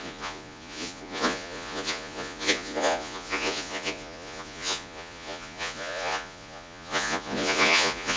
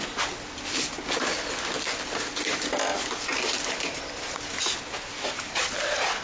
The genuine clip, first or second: second